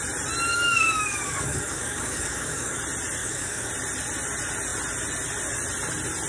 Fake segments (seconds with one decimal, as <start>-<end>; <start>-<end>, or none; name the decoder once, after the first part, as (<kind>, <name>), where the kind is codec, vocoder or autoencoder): 0.5-2.8 (codec, DAC); 3.2-3.7